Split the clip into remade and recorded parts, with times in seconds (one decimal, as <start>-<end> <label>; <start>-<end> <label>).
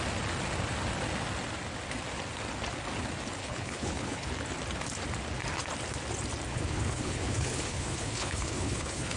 0.0-3.4 recorded; 3.4-4.3 remade; 4.3-6.5 recorded; 6.5-9.2 remade